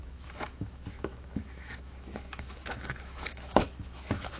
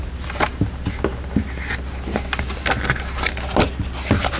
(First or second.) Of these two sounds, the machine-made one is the first